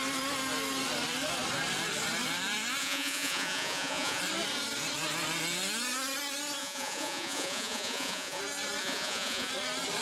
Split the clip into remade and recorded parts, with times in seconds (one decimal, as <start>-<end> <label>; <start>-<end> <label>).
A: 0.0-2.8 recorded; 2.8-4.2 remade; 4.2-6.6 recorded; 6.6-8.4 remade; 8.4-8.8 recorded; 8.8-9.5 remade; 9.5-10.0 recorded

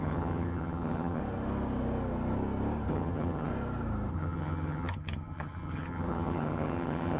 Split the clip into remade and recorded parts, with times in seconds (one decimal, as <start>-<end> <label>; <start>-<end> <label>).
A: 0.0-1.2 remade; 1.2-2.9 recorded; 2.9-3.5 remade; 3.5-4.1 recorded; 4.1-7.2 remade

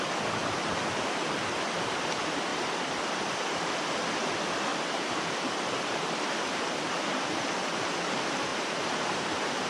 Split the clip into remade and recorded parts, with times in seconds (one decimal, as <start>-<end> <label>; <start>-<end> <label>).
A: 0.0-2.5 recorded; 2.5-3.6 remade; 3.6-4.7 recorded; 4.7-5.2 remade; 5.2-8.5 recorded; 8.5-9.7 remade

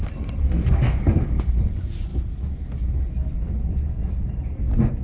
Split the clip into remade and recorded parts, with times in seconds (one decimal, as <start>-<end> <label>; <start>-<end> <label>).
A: 0.0-0.4 recorded; 0.4-1.7 remade; 1.7-5.0 recorded

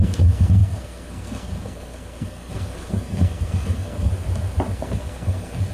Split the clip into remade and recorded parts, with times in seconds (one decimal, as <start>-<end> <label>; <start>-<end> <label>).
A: 0.0-4.1 remade; 4.1-4.7 recorded; 4.7-5.7 remade

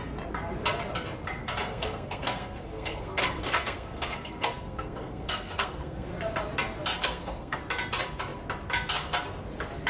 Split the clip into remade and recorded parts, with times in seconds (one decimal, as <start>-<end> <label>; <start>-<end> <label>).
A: 0.0-1.4 recorded; 1.4-6.1 remade; 6.1-7.0 recorded; 7.0-7.6 remade; 7.6-9.9 recorded

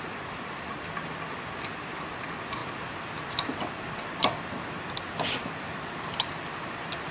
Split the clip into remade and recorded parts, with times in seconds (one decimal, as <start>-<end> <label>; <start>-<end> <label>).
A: 0.0-7.1 recorded

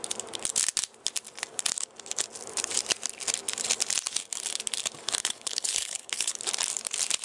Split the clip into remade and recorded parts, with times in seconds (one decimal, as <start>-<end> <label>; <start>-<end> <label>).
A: 0.0-5.2 recorded; 5.2-6.4 remade; 6.4-7.2 recorded